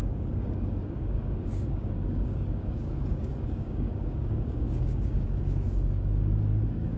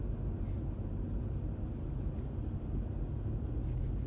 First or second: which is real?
second